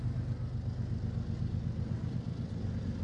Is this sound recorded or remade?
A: recorded